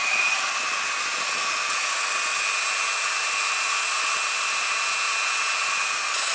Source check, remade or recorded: recorded